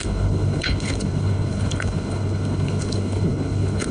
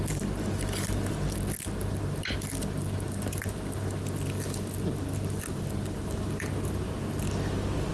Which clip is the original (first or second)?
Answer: second